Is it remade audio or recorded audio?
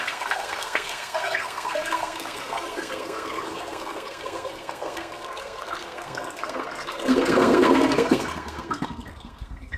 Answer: remade